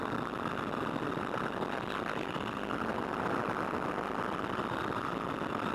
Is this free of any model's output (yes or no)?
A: yes